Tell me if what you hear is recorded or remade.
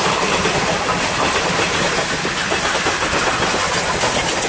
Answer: recorded